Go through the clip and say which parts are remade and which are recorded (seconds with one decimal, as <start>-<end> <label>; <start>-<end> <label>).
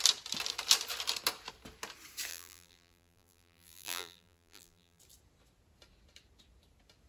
0.0-2.3 recorded; 2.3-5.0 remade; 5.0-7.1 recorded